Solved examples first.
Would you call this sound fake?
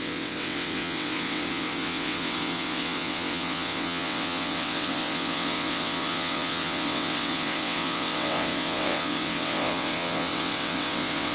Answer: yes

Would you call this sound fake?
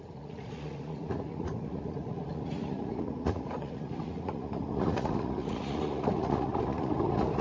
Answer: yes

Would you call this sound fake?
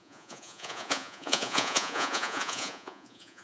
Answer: yes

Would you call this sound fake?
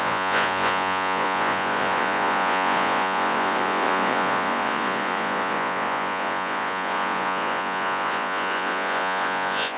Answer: yes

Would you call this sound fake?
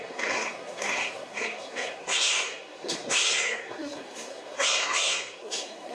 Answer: yes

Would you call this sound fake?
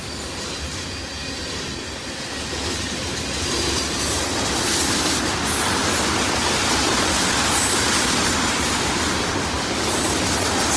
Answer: no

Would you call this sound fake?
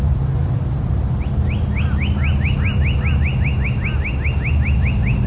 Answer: no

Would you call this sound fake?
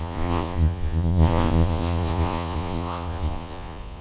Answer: yes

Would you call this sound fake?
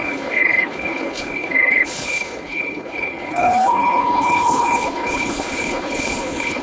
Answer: yes